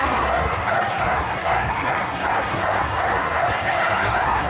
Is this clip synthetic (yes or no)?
yes